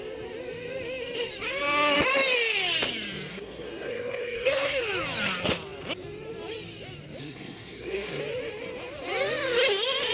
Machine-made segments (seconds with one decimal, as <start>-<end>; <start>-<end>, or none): 3.3-4.8; 7.2-8.2